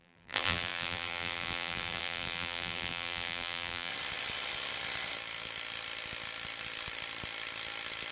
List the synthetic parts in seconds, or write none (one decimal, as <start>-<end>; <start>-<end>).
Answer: 0.0-3.9